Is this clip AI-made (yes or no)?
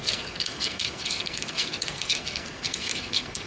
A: yes